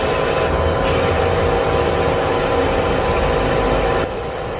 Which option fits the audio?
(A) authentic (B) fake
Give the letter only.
A